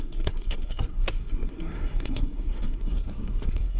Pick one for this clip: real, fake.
fake